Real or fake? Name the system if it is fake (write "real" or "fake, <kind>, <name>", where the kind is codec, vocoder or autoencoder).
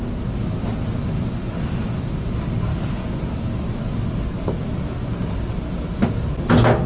real